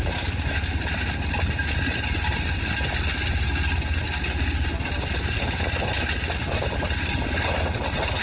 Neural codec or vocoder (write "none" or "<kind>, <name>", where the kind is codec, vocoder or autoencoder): none